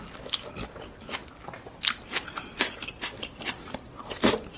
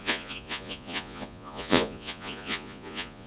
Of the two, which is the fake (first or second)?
second